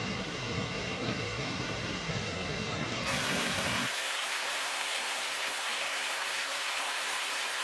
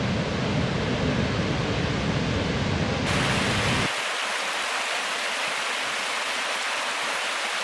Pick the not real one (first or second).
first